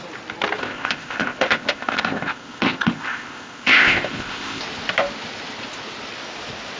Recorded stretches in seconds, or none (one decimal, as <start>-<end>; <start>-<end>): 0.0-0.6; 4.6-6.8